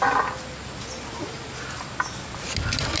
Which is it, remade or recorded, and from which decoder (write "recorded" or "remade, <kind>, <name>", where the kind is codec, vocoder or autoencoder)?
recorded